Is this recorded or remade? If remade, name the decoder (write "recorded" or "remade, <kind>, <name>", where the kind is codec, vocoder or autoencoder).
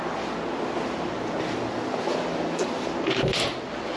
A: recorded